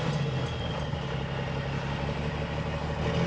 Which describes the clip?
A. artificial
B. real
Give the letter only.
B